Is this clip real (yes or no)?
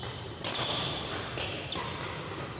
yes